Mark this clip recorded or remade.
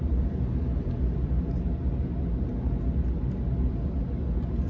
recorded